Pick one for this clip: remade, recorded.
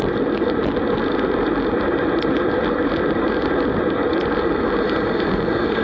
recorded